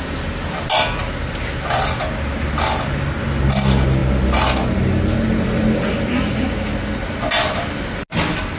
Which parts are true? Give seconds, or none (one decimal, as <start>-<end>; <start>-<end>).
0.0-8.6